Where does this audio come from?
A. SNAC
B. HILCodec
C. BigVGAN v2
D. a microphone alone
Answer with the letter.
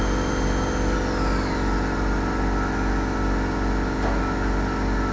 D